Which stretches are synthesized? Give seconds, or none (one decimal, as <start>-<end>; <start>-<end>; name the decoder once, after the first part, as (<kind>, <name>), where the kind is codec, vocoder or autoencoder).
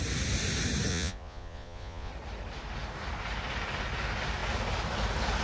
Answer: 0.9-2.1 (vocoder, Vocos)